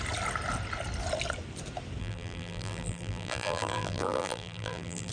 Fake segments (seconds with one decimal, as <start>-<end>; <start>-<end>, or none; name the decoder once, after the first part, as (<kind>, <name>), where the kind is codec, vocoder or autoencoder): 2.0-5.1 (vocoder, BigVGAN v2)

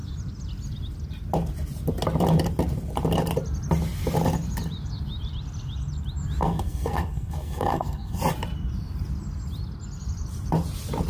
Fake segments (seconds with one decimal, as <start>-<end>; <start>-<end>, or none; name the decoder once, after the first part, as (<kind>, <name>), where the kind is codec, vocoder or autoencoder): 6.4-8.2 (codec, SNAC)